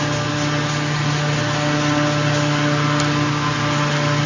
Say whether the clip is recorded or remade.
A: recorded